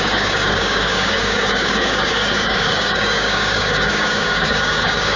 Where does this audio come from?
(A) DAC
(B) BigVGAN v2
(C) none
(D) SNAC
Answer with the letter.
A